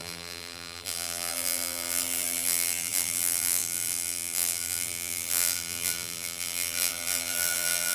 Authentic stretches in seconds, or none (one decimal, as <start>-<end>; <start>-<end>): none